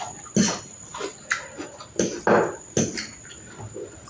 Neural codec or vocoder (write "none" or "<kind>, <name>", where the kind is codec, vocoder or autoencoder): none